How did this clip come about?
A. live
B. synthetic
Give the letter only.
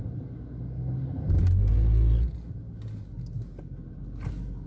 A